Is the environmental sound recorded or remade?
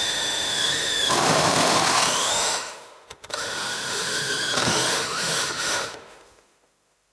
remade